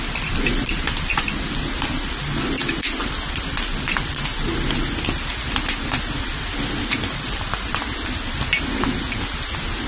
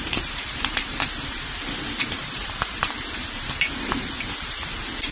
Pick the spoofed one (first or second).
second